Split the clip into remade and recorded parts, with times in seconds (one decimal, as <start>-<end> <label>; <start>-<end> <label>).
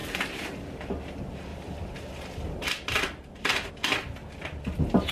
0.0-1.5 recorded; 1.5-3.7 remade; 3.7-5.1 recorded